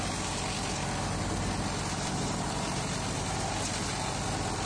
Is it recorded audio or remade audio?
recorded